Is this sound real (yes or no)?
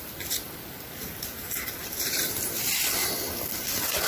yes